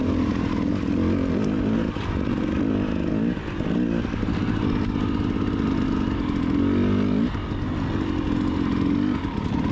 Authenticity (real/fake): real